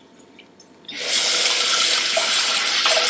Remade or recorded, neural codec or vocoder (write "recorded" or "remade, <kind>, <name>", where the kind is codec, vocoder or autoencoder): recorded